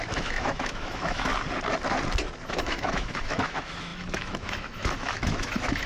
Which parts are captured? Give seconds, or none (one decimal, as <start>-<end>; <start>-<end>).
1.3-2.5